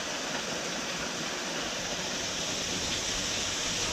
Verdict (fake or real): real